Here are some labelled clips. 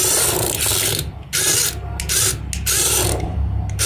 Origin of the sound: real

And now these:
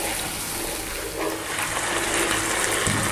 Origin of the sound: real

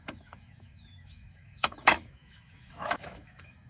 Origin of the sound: fake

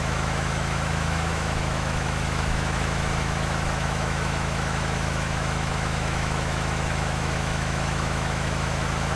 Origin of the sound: fake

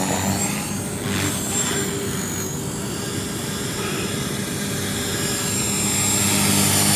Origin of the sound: real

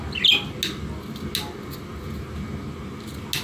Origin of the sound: real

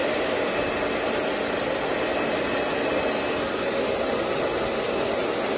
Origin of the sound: real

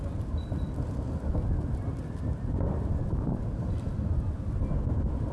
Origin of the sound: real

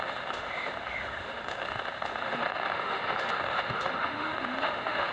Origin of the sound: fake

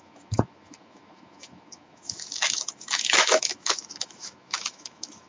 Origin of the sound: fake